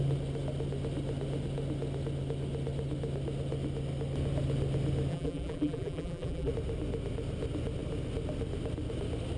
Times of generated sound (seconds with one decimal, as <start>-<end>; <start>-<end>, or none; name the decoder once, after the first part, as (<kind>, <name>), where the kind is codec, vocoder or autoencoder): 5.1-6.5 (vocoder, BigVGAN v2)